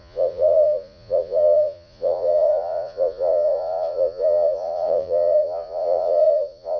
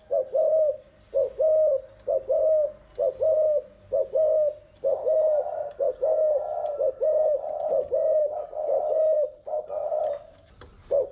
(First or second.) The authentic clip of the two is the second